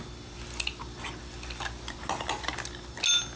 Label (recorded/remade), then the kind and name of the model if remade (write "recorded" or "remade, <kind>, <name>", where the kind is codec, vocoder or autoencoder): recorded